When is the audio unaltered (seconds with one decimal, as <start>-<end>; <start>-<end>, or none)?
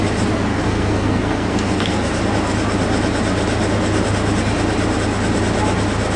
0.0-0.5; 2.2-6.2